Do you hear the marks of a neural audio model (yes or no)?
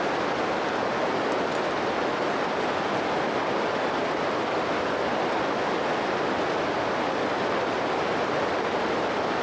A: no